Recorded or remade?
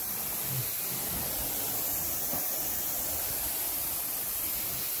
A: recorded